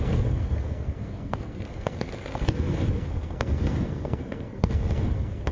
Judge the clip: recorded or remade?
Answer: remade